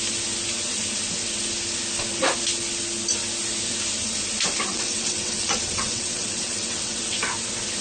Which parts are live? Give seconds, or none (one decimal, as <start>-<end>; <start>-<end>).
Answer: 0.0-4.7; 7.2-7.8